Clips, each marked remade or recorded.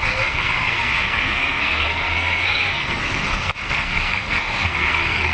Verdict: remade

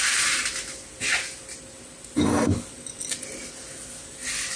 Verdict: recorded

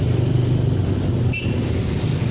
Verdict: recorded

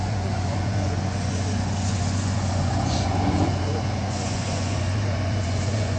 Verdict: remade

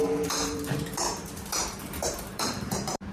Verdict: remade